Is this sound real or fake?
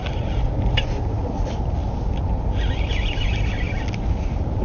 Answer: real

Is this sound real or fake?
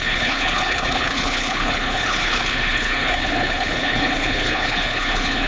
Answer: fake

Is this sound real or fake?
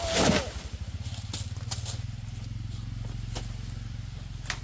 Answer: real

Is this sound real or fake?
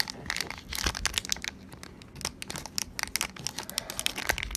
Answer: real